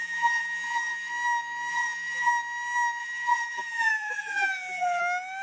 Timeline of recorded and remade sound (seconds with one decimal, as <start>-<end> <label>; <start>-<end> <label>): 0.0-1.1 remade; 1.1-1.7 recorded; 1.7-2.3 remade; 2.3-3.0 recorded; 3.0-5.0 remade; 5.0-5.4 recorded